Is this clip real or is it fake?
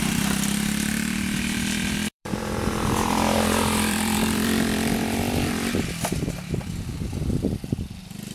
fake